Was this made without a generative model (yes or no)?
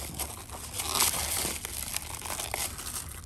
yes